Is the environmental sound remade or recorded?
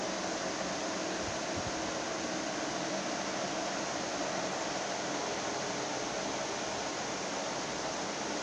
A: recorded